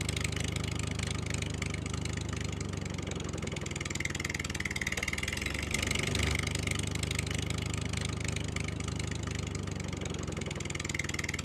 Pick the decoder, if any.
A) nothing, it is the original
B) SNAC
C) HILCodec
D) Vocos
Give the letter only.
A